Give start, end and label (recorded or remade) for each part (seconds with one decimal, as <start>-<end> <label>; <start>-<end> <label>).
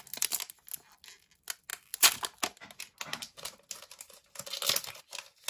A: 0.0-5.5 recorded